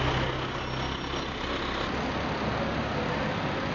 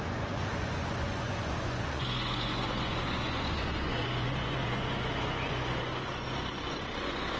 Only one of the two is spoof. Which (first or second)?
second